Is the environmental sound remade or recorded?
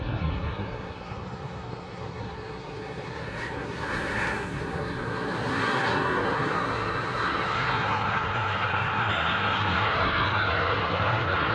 remade